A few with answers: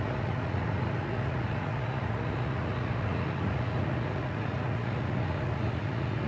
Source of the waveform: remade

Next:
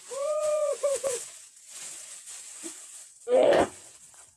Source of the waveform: remade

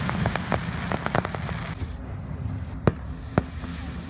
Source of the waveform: recorded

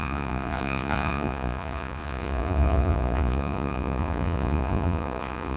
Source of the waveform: remade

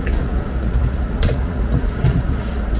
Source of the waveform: remade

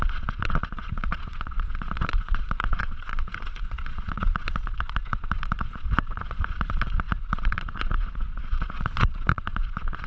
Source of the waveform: remade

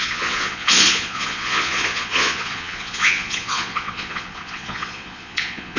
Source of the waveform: remade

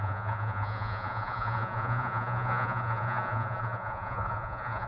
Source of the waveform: remade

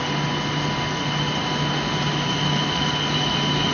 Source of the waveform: recorded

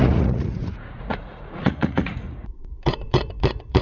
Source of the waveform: remade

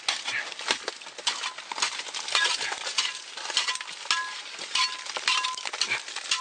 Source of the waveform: recorded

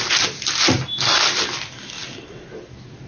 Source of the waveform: recorded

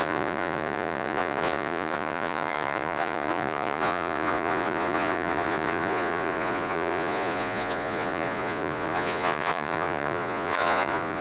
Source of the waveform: remade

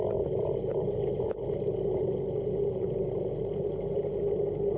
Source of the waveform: recorded